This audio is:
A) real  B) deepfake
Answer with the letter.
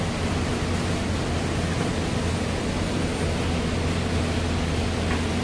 A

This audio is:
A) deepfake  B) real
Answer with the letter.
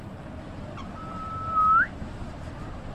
B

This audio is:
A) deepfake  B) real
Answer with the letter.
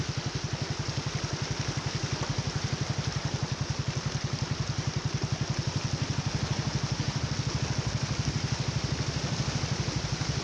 B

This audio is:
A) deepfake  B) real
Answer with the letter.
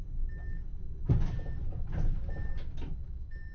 B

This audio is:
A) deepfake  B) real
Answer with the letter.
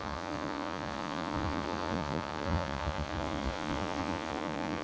A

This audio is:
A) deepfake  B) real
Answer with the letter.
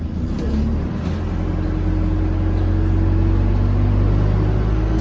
B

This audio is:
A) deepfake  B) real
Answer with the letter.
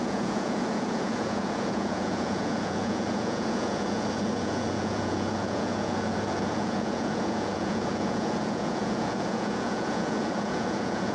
A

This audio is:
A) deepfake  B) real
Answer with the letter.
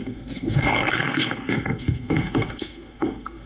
A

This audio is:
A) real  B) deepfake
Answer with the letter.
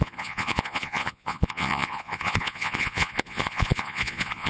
B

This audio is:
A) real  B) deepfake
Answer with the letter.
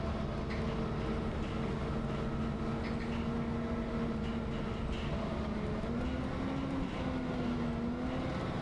A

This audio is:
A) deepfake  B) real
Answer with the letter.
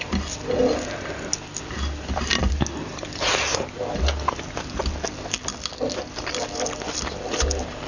B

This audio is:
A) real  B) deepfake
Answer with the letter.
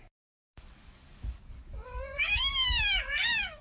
B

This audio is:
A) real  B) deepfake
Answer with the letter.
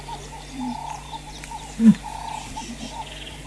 B